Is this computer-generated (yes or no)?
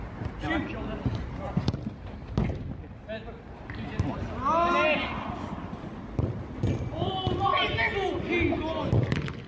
no